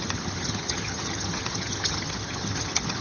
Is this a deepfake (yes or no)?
yes